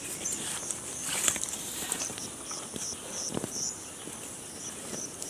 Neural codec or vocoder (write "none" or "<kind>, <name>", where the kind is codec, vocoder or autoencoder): vocoder, BigVGAN v2